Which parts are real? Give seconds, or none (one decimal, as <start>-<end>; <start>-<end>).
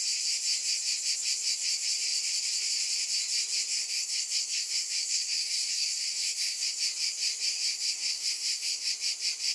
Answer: 0.0-3.7; 6.8-7.7; 8.9-9.5